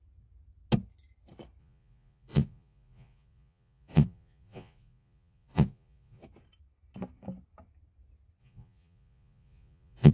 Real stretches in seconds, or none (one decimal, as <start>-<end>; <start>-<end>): 0.0-1.6; 6.2-8.4